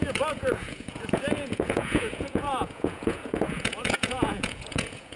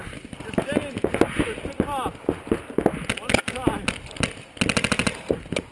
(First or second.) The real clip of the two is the second